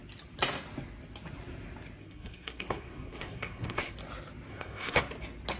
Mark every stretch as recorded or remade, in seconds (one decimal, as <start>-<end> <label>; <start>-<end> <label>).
0.0-2.0 recorded; 2.0-3.9 remade; 3.9-4.5 recorded; 4.5-5.0 remade; 5.0-5.6 recorded